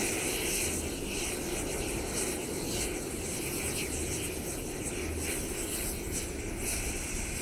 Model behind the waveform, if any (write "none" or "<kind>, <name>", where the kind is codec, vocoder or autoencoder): none